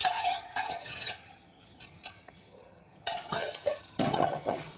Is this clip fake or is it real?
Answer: fake